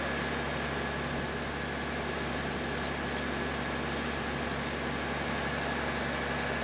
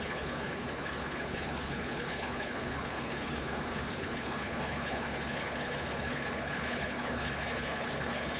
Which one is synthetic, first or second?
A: second